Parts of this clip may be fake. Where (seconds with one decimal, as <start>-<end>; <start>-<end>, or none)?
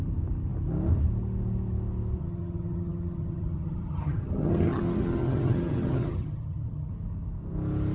2.2-6.9